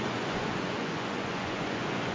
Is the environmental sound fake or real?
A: fake